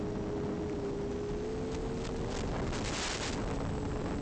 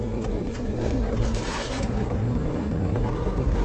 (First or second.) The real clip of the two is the first